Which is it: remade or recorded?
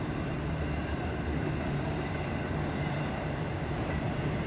remade